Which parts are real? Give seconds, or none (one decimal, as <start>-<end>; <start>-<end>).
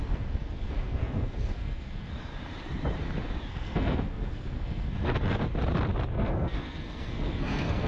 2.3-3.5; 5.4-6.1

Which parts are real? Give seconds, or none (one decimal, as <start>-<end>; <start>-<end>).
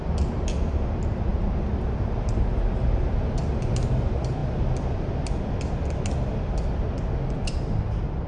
0.0-8.3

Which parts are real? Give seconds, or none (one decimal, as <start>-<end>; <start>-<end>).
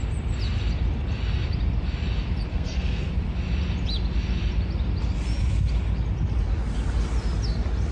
0.0-2.5; 3.1-7.9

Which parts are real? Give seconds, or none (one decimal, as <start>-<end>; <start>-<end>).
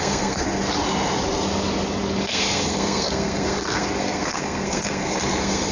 0.6-2.2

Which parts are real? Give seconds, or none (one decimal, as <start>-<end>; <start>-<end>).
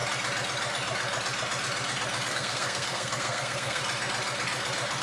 0.0-2.3; 3.8-5.0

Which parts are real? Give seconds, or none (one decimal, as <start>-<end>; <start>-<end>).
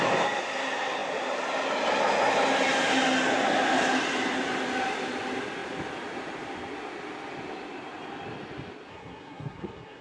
0.0-8.9